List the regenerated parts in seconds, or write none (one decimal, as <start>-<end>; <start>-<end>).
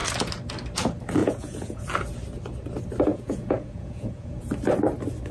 1.2-1.8; 3.1-4.5